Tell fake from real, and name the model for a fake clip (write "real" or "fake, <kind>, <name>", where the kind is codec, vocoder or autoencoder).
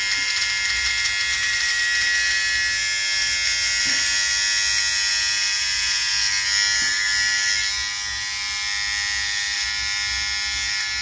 real